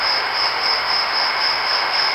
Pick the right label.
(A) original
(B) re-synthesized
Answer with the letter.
B